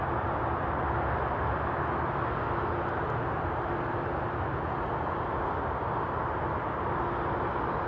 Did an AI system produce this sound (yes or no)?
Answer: no